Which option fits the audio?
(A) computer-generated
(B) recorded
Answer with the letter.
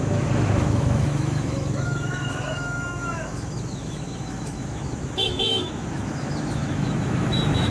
A